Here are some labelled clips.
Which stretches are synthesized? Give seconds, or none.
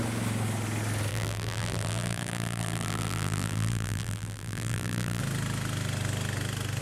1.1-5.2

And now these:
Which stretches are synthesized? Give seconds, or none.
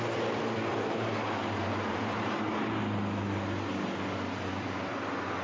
0.7-2.8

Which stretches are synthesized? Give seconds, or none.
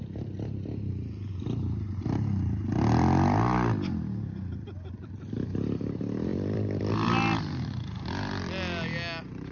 6.3-6.9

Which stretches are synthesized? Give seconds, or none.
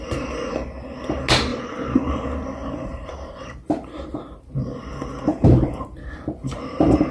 1.5-2.1; 2.6-4.8; 5.3-7.1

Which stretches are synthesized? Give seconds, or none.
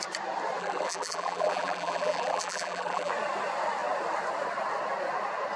0.6-3.1